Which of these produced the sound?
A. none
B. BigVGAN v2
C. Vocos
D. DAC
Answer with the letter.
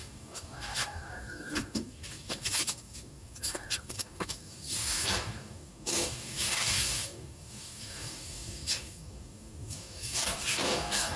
D